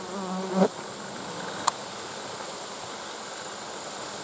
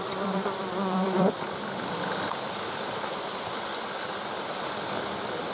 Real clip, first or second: first